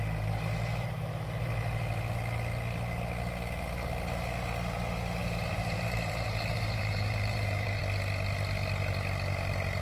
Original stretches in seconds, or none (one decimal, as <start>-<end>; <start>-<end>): 0.0-5.2; 7.8-9.8